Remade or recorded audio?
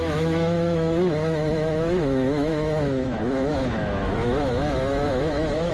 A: remade